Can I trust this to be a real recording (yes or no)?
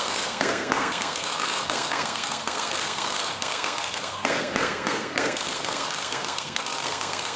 no